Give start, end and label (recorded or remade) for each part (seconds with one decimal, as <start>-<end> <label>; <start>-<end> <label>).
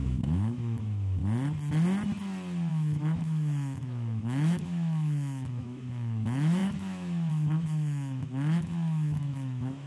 0.0-1.2 remade; 1.2-2.7 recorded; 2.7-9.9 remade